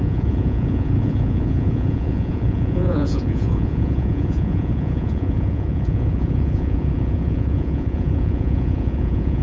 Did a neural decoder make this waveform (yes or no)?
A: yes